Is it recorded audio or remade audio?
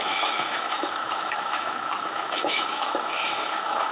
remade